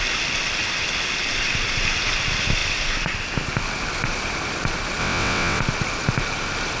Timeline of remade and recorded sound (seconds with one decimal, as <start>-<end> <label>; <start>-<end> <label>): 0.0-5.0 recorded; 5.0-5.6 remade; 5.6-6.8 recorded